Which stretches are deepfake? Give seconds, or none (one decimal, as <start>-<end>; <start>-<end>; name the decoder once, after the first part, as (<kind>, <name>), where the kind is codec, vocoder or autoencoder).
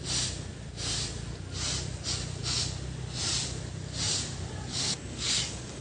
4.7-5.8 (codec, DAC)